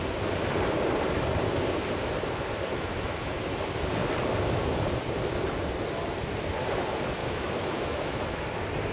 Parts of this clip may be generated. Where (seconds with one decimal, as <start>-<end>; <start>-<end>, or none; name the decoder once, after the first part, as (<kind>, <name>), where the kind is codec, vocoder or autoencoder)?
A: 2.7-3.3 (autoencoder, DAC-VAE); 7.2-8.4

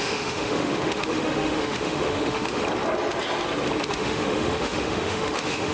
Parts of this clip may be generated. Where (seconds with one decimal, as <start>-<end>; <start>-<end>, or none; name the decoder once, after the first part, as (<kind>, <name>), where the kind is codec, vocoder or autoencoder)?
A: 0.0-2.6 (autoencoder, DAC-VAE); 3.9-5.7

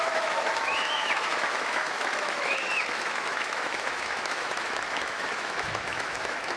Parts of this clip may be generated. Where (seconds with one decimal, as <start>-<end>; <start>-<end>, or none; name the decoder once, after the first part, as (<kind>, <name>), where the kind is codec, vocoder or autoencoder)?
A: 0.0-6.6 (autoencoder, DAC-VAE)